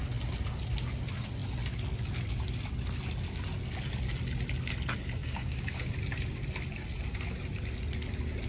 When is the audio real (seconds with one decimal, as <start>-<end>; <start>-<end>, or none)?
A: 0.0-5.2; 5.9-8.5